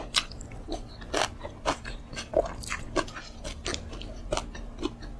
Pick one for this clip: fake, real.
real